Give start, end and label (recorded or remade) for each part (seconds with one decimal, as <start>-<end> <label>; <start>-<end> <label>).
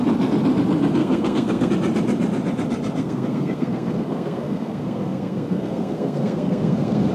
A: 0.0-1.0 recorded; 1.0-1.7 remade; 1.7-3.0 recorded; 3.0-7.1 remade